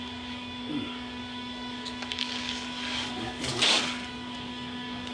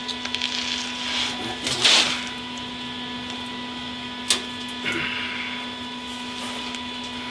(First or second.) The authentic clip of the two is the second